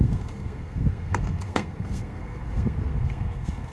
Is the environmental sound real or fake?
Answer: fake